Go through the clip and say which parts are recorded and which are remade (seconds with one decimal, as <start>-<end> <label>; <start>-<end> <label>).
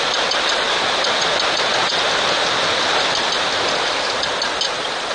0.0-5.1 recorded